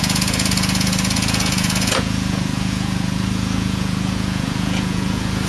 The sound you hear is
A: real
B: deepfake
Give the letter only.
B